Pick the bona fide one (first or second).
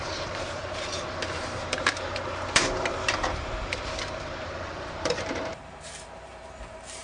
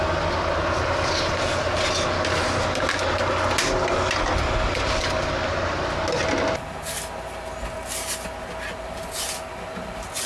second